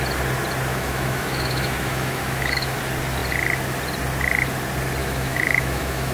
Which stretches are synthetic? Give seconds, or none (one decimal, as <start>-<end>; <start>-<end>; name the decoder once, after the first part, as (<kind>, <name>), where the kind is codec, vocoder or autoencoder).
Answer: 0.7-2.8 (autoencoder, DAC-VAE); 5.0-6.1